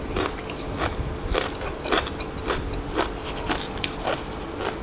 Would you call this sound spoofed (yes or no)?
no